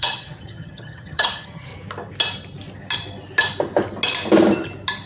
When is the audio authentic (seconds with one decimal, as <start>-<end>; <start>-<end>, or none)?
1.7-5.1